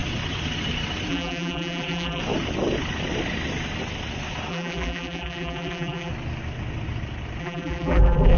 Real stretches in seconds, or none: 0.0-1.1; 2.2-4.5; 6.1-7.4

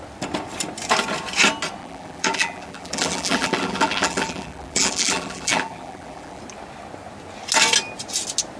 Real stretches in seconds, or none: 0.0-1.8; 6.4-8.6